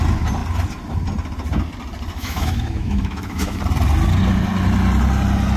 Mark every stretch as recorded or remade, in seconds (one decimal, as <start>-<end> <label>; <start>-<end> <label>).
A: 0.0-2.1 recorded; 2.1-3.6 remade; 3.6-5.6 recorded